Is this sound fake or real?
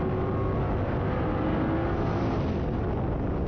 real